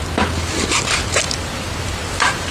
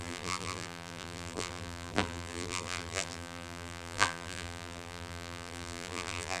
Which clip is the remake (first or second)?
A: second